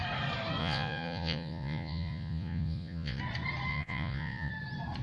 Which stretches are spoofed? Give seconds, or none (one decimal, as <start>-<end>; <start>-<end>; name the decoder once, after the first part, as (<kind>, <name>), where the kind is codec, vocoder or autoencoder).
0.6-3.2 (vocoder, Vocos); 3.7-4.5